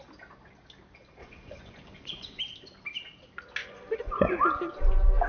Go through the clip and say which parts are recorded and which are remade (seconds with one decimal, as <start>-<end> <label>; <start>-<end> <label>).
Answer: 0.0-1.2 recorded; 1.2-2.4 remade; 2.4-3.6 recorded; 3.6-4.3 remade; 4.3-5.3 recorded